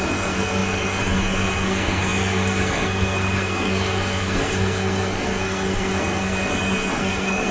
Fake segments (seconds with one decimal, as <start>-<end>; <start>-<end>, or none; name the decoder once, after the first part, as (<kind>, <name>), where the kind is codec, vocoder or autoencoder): 0.0-7.5 (codec, SNAC)

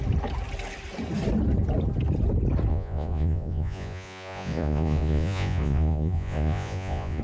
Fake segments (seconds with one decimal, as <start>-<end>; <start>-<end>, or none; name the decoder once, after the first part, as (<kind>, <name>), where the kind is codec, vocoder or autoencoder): 2.7-7.2 (vocoder, Vocos)

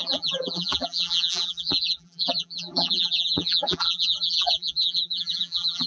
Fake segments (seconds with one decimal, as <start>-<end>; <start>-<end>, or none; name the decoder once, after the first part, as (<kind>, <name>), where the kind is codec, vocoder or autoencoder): 0.0-5.9 (vocoder, BigVGAN v2)

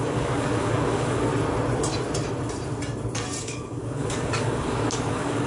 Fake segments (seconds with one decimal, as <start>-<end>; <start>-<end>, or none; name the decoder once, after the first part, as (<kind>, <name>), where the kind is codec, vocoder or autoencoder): 0.0-1.3 (codec, DAC); 3.4-5.5

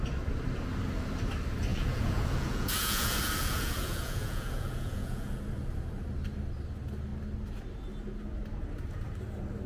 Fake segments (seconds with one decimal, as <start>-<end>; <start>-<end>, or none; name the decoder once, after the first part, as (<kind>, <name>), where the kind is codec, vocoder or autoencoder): 1.7-5.4 (vocoder, Vocos)

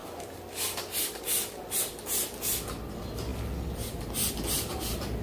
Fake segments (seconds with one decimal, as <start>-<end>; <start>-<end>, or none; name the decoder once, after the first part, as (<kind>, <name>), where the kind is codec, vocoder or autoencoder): 0.0-5.2 (vocoder, BigVGAN v2)

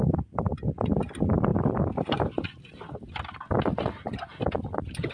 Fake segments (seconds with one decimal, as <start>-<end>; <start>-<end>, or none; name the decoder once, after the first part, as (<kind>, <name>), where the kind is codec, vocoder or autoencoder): none